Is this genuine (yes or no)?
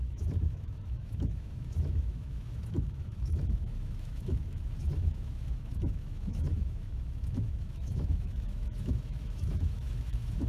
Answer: no